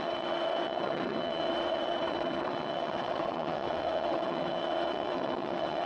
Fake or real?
fake